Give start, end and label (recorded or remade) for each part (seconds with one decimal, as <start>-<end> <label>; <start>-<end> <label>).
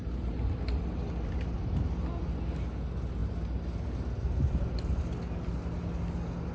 0.0-6.5 recorded